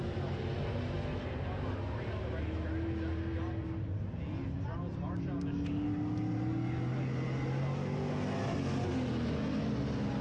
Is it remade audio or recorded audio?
recorded